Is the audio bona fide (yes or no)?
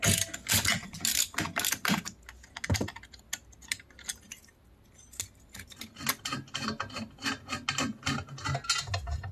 yes